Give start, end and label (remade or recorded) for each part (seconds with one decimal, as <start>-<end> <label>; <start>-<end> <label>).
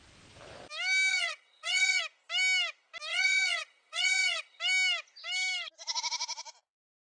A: 0.0-1.1 recorded; 1.1-2.0 remade; 2.0-3.1 recorded; 3.1-4.6 remade; 4.6-7.1 recorded